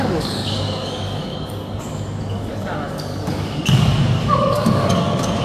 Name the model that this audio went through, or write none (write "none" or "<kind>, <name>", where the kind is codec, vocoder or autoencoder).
codec, DAC